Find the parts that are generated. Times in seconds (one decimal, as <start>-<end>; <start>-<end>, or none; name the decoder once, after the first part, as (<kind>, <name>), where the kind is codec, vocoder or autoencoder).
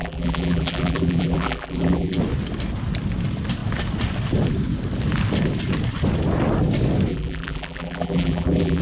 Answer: 0.0-2.2 (vocoder, BigVGAN v2); 7.1-8.8